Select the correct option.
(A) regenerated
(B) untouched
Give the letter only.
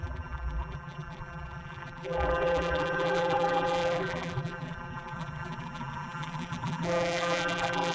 A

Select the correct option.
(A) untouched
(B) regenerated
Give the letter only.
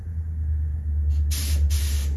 A